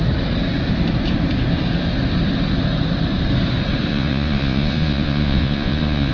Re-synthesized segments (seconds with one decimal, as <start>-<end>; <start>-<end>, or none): 3.9-6.1